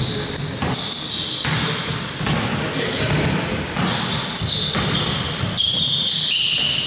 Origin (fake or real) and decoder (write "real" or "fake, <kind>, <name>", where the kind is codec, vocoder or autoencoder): real